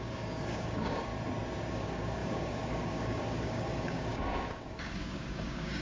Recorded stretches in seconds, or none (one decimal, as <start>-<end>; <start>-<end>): 1.1-1.7